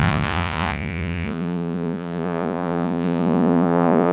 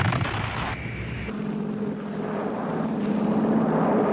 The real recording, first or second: second